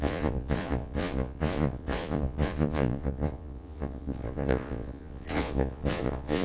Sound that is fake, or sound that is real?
fake